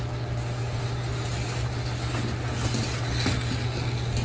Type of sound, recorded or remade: recorded